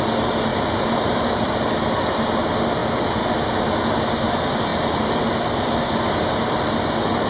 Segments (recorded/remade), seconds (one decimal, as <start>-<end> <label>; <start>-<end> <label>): 0.0-0.5 recorded; 0.5-1.5 remade; 1.5-4.7 recorded; 4.7-7.3 remade